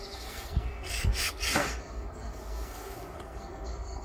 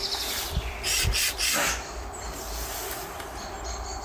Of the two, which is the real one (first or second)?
second